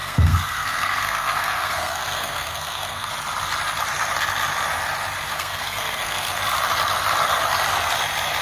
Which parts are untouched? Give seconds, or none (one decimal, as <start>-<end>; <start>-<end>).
3.1-5.3; 6.3-8.4